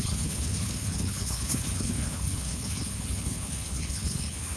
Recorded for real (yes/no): no